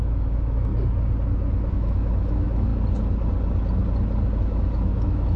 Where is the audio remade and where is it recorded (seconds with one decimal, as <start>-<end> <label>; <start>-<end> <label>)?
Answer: 0.0-0.7 remade; 0.7-1.7 recorded; 1.7-2.7 remade; 2.7-4.4 recorded; 4.4-5.4 remade